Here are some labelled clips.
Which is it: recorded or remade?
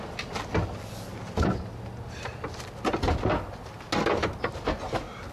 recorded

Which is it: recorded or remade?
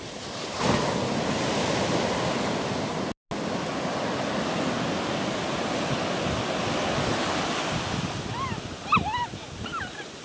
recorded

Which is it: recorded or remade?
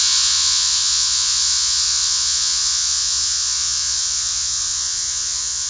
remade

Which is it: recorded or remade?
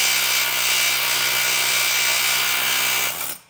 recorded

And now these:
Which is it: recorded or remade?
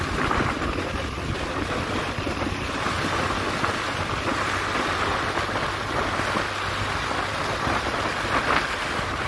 recorded